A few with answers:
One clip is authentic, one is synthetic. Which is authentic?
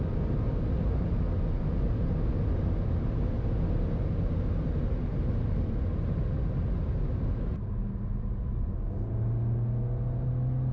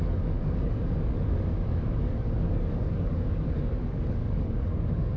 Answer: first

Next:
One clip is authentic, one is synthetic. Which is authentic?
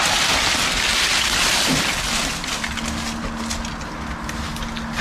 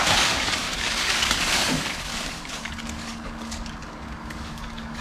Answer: first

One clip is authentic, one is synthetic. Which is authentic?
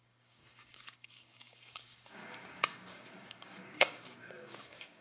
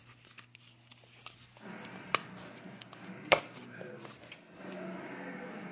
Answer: second